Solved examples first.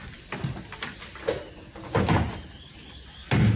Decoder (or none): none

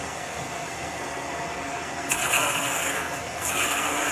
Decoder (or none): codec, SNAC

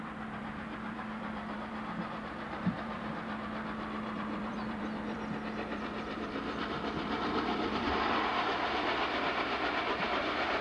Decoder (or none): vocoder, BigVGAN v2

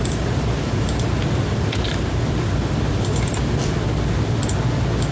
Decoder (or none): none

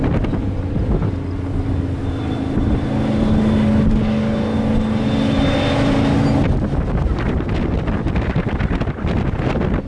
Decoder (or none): none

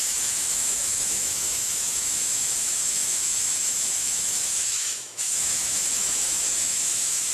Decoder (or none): autoencoder, DAC-VAE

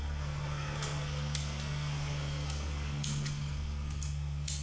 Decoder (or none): codec, SNAC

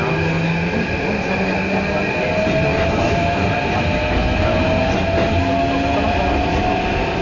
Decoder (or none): none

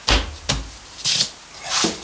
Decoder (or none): none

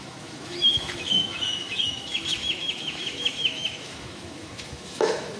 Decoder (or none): autoencoder, DAC-VAE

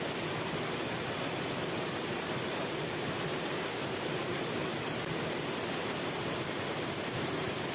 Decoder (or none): none